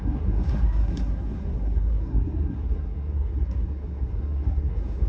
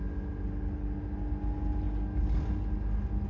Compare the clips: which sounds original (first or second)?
second